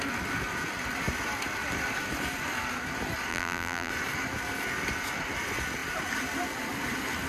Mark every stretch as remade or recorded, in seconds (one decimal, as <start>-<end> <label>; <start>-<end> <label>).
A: 0.0-3.3 recorded; 3.3-3.9 remade; 3.9-7.3 recorded